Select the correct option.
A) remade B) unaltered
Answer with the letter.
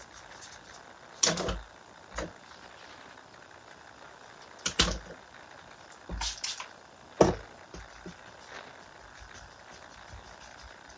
B